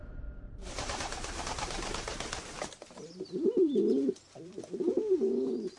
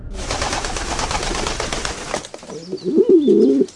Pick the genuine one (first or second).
second